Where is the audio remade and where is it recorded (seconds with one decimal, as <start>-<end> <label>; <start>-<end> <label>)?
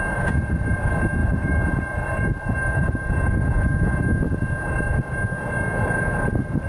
0.0-1.2 recorded; 1.2-3.1 remade; 3.1-6.7 recorded